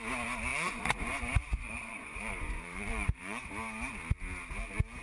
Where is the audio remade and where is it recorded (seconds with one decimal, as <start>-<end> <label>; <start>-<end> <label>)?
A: 0.0-0.5 recorded; 0.5-3.5 remade; 3.5-5.0 recorded